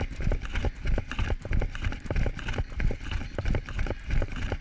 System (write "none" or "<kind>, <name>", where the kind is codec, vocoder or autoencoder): none